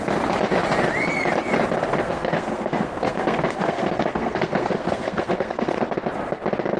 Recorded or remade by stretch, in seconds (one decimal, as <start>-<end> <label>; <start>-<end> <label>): 0.0-1.9 recorded; 1.9-5.8 remade; 5.8-6.8 recorded